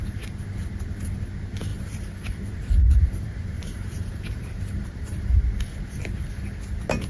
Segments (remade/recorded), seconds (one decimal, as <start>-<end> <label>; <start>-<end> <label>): 0.0-1.7 recorded; 1.7-5.3 remade; 5.3-7.1 recorded